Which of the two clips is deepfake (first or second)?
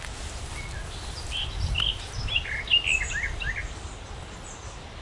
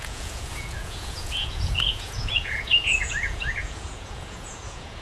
second